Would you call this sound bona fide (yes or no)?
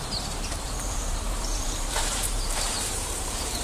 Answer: no